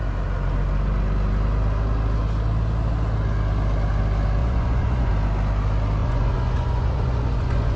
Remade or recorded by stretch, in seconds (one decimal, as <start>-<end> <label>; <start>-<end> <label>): 0.0-4.4 recorded; 4.4-5.1 remade; 5.1-6.0 recorded; 6.0-7.8 remade